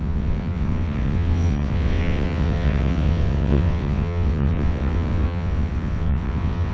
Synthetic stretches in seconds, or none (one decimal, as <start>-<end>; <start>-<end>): 0.0-6.7